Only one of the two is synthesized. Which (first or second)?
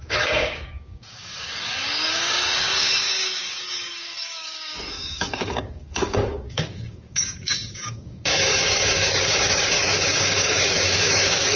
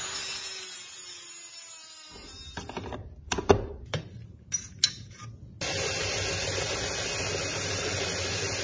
first